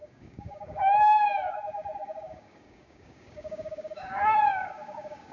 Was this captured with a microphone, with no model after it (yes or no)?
no